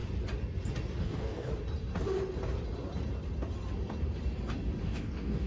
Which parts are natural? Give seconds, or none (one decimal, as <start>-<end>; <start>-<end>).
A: 0.0-1.0; 1.5-4.8